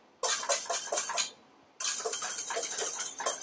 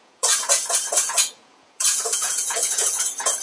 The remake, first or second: second